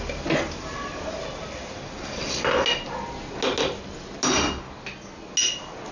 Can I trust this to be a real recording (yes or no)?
yes